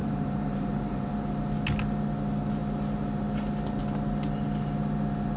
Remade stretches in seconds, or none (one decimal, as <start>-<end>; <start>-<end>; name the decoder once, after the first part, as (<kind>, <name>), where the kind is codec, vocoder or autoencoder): 0.0-1.1 (vocoder, BigVGAN v2)